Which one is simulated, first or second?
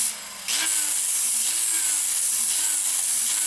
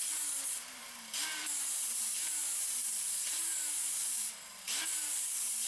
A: second